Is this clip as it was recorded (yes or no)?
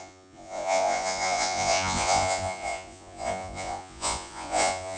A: no